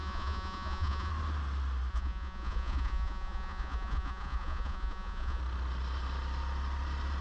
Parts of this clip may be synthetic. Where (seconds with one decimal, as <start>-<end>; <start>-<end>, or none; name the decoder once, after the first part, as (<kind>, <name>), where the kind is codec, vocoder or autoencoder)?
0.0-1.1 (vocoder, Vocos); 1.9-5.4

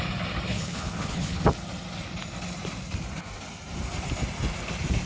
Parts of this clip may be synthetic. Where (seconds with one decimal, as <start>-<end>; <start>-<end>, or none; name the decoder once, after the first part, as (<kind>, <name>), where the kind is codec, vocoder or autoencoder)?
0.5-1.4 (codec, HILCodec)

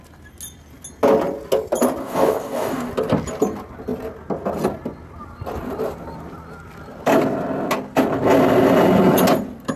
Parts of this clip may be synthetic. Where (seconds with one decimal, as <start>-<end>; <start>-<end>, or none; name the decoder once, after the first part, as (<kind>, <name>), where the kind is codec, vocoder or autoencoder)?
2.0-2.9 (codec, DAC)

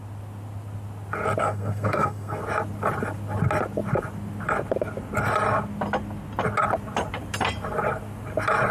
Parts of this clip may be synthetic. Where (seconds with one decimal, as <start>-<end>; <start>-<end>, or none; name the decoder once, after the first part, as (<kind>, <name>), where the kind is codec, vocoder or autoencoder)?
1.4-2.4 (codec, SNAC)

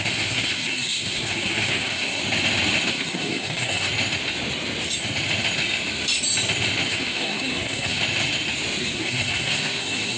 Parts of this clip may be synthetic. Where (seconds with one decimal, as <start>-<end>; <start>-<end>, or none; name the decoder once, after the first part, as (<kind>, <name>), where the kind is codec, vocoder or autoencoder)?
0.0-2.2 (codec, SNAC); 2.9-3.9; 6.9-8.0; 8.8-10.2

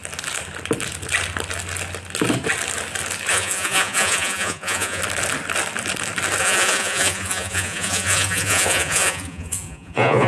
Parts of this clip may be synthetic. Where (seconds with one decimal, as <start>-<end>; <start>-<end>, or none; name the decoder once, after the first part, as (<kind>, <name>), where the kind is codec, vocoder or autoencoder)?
3.3-5.0 (vocoder, Vocos); 6.4-10.3